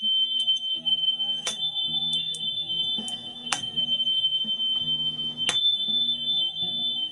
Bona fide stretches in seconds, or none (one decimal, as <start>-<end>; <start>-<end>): 4.4-5.6